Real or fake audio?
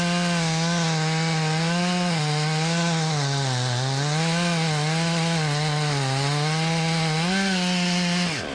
real